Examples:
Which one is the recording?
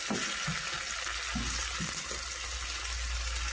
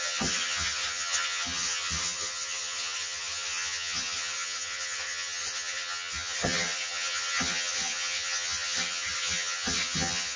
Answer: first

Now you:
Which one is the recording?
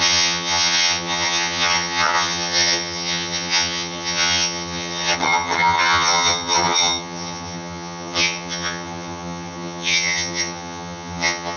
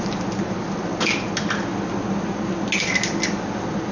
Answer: second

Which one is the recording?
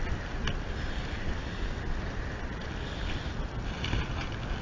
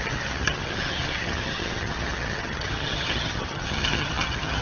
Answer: first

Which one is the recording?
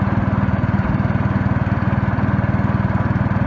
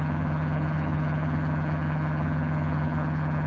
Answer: first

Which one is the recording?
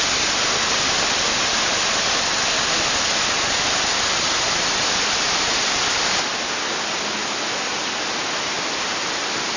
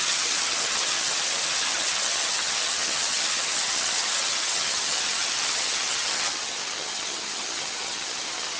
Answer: first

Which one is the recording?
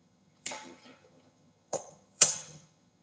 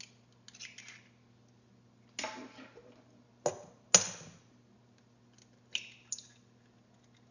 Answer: second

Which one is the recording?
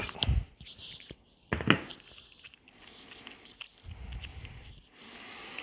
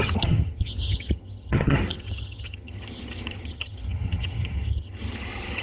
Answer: first